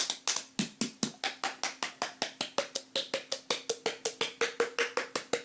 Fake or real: real